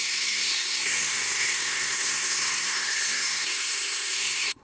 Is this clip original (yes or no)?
no